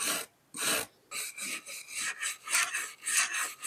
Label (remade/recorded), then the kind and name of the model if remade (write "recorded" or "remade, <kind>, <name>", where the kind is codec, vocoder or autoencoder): recorded